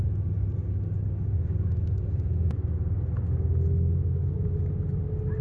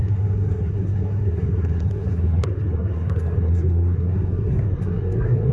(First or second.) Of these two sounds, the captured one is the first